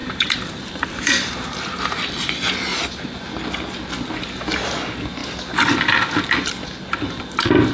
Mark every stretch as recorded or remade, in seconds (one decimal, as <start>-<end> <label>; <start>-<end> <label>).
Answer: 0.0-2.0 remade; 2.0-2.7 recorded; 2.7-3.2 remade; 3.2-7.7 recorded